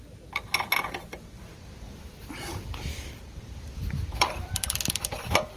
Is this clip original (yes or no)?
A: no